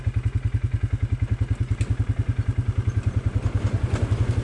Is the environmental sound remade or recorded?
recorded